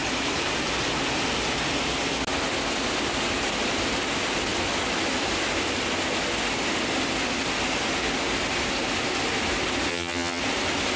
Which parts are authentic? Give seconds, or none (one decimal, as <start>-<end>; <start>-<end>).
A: 0.0-9.9; 10.4-11.0